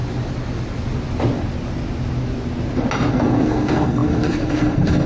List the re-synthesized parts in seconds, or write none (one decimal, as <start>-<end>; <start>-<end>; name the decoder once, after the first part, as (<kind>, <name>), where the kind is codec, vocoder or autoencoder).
3.1-5.1 (codec, SNAC)